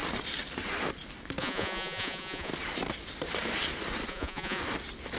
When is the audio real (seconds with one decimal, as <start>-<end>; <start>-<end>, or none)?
0.0-1.4; 2.5-4.1; 4.6-5.2